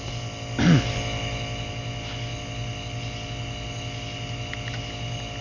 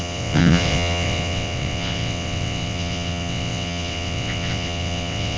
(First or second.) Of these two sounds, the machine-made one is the second